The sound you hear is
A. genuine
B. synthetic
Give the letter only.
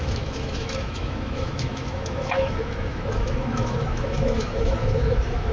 B